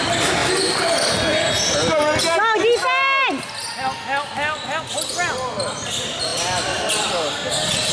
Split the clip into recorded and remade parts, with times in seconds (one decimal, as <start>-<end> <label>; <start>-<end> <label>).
0.0-7.9 recorded